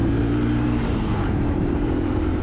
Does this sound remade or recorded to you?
remade